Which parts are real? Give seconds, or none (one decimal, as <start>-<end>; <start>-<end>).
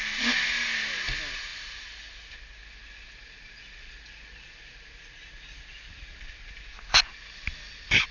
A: 0.0-8.1